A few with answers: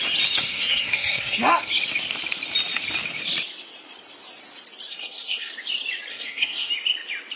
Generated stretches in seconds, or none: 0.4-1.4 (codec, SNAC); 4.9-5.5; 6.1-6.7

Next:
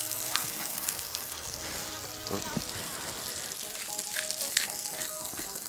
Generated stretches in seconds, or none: 0.0-1.6 (codec, SNAC); 4.5-5.7